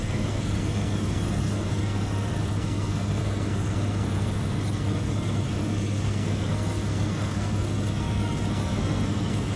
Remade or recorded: remade